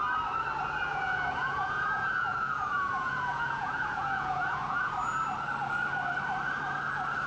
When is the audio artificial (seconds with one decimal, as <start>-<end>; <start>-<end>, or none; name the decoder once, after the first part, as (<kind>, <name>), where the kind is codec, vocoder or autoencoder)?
0.9-4.9 (vocoder, Vocos)